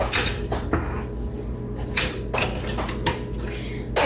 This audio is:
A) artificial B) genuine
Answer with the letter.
B